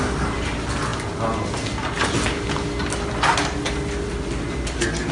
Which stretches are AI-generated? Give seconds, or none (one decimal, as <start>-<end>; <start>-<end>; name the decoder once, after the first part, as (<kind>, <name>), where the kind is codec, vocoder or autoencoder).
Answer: none